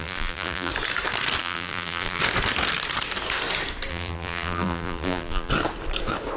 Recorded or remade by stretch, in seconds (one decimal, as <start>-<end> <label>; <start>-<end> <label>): 0.0-0.7 remade; 0.7-1.4 recorded; 1.4-2.2 remade; 2.2-3.9 recorded; 3.9-5.5 remade; 5.5-6.4 recorded